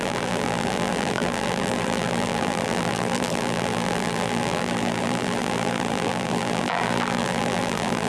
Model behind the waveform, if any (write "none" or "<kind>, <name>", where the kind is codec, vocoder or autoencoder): vocoder, BigVGAN v2